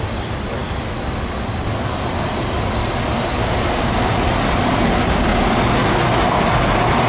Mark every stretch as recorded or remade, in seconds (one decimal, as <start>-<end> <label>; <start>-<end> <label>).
0.0-0.6 remade; 0.6-3.9 recorded; 3.9-5.3 remade; 5.3-7.1 recorded